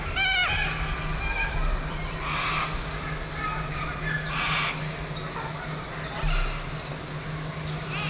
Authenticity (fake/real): real